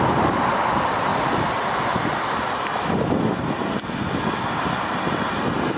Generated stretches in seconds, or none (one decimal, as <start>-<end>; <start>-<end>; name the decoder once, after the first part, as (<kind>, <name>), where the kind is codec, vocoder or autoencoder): none